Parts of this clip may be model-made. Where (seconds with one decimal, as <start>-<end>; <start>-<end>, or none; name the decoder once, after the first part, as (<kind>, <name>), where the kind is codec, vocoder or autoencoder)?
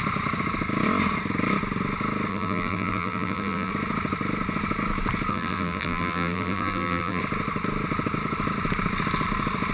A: 2.3-3.7 (vocoder, BigVGAN v2); 5.3-7.2